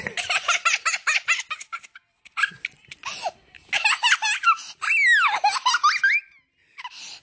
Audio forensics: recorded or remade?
recorded